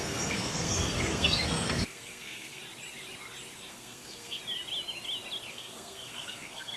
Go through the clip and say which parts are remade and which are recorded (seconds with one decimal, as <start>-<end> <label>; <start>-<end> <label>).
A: 0.0-2.6 remade; 2.6-3.7 recorded; 3.7-4.4 remade; 4.4-5.5 recorded; 5.5-6.8 remade